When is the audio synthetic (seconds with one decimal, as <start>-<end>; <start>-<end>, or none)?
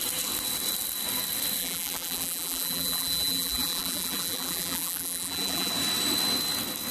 1.6-5.7